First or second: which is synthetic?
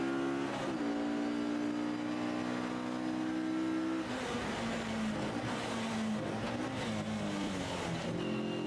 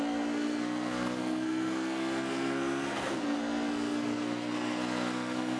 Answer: second